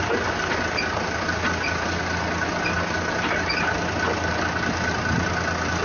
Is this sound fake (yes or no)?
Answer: no